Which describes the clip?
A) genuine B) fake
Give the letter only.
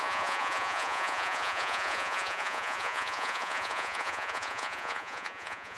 B